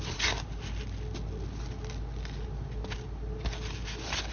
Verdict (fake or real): real